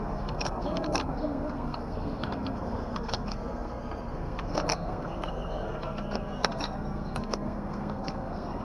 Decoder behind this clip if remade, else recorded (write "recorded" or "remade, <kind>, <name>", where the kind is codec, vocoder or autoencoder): remade, codec, SNAC